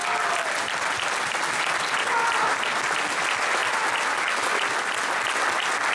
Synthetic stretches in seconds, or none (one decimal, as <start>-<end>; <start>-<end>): 3.6-4.3